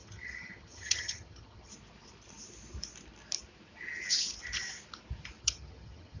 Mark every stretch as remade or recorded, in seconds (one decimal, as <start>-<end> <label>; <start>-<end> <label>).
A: 0.0-1.7 remade; 1.7-5.4 recorded; 5.4-6.2 remade